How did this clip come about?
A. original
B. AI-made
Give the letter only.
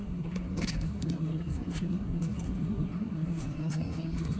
B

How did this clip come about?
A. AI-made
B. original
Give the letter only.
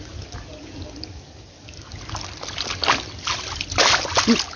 B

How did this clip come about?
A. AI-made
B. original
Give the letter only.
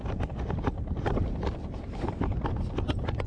B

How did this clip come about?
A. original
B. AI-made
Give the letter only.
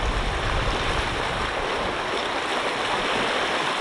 A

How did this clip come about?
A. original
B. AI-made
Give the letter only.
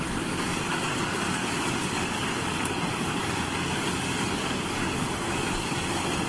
B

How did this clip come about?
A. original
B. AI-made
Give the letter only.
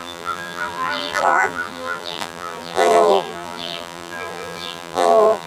B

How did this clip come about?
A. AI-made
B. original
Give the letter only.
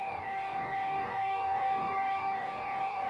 A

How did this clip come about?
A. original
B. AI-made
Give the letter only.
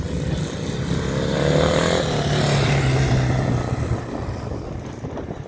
A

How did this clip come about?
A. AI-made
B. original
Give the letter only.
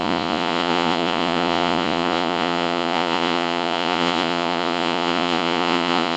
A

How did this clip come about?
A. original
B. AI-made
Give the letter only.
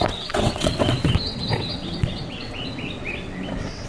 B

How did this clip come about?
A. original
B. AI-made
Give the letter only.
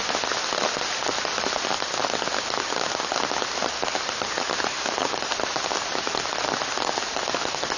A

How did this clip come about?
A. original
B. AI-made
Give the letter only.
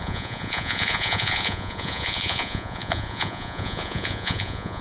B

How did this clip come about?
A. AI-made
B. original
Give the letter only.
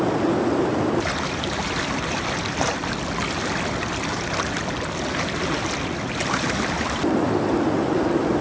B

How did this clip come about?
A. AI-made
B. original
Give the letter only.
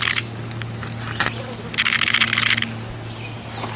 B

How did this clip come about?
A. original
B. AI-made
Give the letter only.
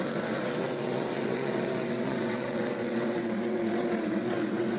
B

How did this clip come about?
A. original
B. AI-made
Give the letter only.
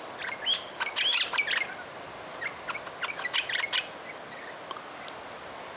A